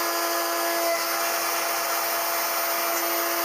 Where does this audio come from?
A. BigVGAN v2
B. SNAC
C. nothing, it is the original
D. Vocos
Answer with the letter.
C